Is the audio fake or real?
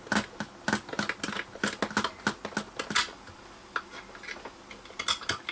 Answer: real